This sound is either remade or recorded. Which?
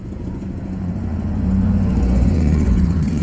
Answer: remade